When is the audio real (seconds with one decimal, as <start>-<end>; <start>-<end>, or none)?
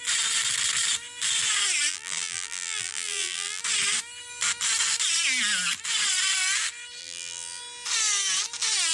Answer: 0.0-1.9; 3.6-7.0; 7.6-8.9